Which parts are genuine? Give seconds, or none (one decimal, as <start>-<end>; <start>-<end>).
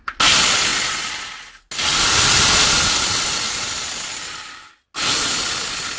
0.0-6.0